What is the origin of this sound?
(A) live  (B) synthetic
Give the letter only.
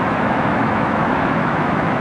B